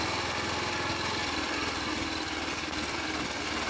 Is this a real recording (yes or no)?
yes